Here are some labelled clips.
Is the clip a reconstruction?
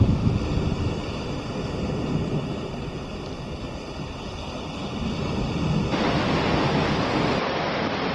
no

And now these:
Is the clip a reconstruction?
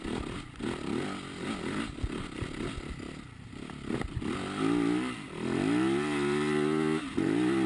no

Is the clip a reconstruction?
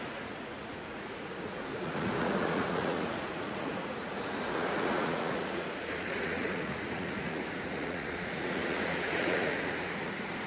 yes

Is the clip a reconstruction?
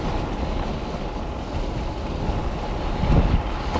no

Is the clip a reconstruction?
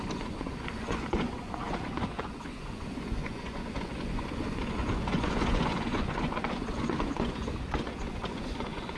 yes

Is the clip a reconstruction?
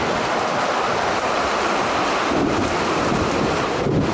no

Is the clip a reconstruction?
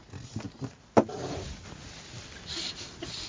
no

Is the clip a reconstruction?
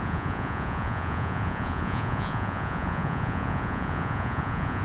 yes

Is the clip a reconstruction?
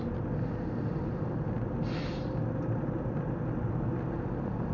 no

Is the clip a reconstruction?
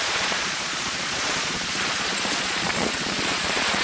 yes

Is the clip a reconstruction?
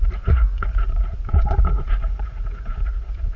yes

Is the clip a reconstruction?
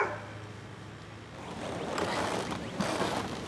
no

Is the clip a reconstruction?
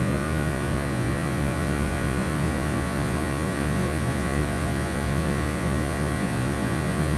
yes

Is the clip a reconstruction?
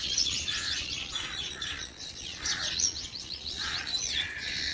yes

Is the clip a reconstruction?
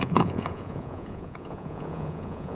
yes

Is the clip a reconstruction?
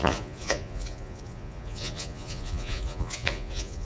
yes